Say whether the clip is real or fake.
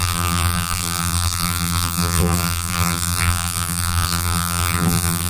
fake